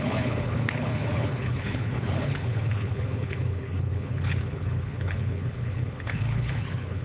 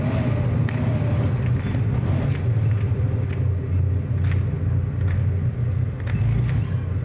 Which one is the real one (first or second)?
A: second